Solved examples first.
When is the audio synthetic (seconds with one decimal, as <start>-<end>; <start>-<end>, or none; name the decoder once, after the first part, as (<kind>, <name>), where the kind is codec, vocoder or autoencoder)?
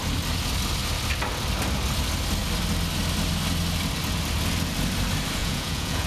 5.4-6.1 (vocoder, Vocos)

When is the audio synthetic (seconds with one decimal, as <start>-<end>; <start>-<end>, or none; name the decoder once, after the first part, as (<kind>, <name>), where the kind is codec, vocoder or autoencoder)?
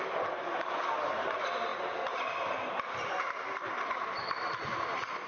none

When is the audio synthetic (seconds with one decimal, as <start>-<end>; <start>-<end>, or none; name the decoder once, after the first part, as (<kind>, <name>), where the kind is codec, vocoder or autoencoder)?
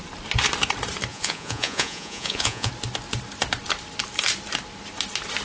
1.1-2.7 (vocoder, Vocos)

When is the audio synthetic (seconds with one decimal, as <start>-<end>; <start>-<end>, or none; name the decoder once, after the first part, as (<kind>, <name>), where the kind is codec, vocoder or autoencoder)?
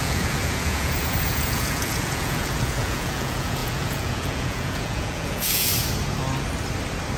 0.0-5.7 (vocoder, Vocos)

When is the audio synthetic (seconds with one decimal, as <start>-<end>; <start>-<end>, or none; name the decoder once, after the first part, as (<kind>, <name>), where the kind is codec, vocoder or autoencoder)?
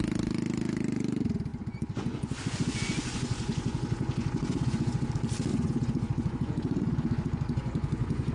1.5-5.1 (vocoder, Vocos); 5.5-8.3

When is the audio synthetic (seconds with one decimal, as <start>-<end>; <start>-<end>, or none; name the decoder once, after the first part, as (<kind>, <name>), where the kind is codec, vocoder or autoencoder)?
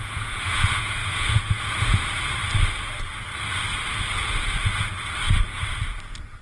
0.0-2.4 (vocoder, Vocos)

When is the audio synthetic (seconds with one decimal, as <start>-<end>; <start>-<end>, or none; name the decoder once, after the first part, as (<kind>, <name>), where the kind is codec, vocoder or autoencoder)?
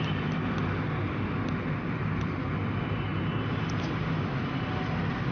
none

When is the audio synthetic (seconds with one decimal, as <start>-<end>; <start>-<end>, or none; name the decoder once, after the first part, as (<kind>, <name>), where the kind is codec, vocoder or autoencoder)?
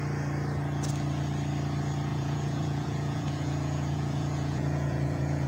2.1-5.5 (vocoder, Vocos)